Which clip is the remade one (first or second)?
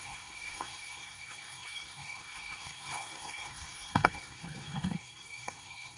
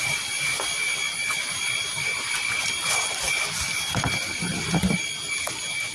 first